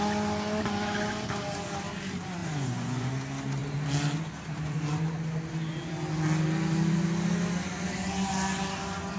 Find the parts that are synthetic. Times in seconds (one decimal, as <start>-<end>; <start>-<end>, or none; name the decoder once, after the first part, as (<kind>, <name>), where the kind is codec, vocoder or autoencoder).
2.4-3.1 (vocoder, Vocos)

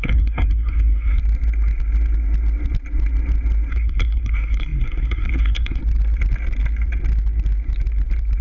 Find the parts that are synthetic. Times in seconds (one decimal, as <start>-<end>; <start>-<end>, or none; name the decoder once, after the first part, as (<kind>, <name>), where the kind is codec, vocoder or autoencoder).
0.0-1.2 (codec, SNAC); 3.7-5.8

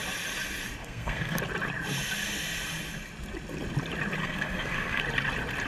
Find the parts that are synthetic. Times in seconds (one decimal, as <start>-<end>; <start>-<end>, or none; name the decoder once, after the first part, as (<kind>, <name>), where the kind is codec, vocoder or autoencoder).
0.8-1.4 (codec, SNAC); 4.2-5.0

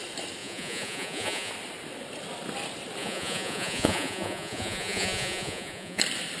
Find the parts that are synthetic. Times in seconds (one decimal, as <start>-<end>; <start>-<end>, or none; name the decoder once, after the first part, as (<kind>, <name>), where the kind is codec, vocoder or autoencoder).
0.4-1.5 (vocoder, Vocos); 3.0-6.0